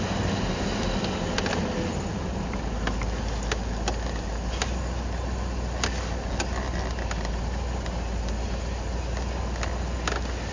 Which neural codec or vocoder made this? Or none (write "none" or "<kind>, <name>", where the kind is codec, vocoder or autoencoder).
none